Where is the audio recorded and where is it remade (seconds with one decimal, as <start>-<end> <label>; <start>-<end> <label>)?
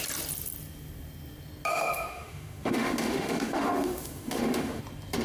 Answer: 0.0-1.7 recorded; 1.7-4.8 remade; 4.8-5.2 recorded